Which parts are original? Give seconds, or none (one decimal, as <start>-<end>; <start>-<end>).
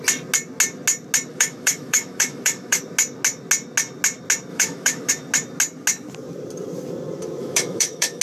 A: 0.0-1.3; 2.8-4.5; 5.1-7.4